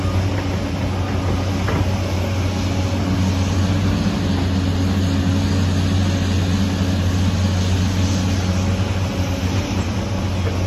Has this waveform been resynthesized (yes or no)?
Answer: no